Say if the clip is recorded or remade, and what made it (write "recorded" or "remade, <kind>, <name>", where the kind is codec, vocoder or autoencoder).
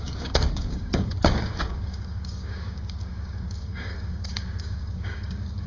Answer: remade, codec, DAC